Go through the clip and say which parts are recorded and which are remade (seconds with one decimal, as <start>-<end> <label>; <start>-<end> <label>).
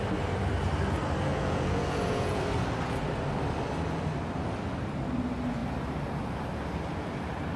0.0-1.3 recorded; 1.3-2.4 remade; 2.4-7.6 recorded